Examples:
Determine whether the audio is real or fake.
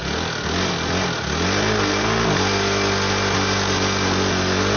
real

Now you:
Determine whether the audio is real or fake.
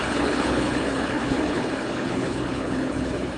fake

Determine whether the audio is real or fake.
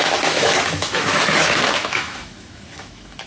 fake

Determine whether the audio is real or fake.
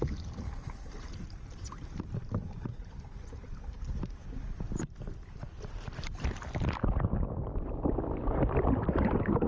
real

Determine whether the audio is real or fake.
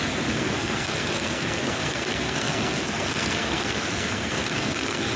fake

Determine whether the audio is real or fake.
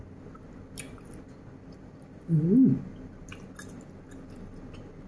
real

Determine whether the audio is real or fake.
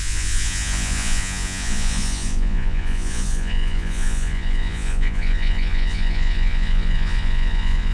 fake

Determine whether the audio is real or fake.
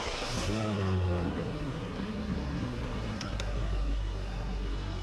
fake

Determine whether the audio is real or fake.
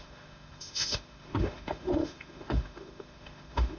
fake